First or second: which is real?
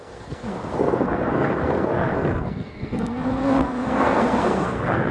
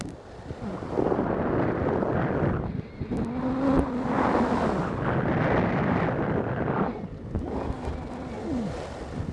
second